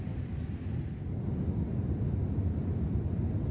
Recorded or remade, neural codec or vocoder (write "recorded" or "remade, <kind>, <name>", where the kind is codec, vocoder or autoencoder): recorded